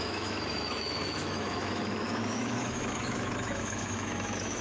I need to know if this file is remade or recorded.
remade